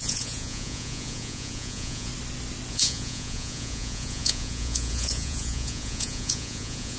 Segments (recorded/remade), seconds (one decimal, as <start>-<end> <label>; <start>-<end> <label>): 0.0-2.1 remade; 2.1-2.7 recorded; 2.7-7.0 remade